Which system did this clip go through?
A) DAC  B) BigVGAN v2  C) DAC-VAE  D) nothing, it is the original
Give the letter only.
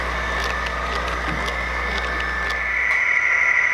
D